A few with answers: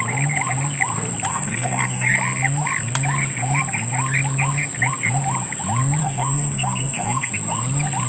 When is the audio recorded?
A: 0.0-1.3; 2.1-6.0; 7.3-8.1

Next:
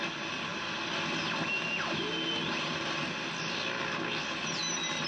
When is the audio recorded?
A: 0.0-5.1

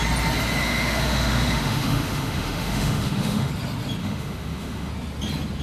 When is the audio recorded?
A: 0.0-0.6; 3.5-4.0; 4.9-5.6